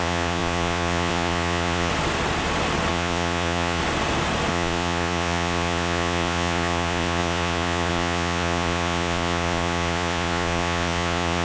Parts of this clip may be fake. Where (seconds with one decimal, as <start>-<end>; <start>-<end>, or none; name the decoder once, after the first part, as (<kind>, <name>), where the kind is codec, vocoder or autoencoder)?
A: 0.0-1.9 (vocoder, Vocos); 2.9-3.8; 4.5-11.4